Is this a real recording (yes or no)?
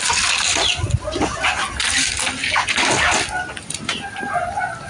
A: yes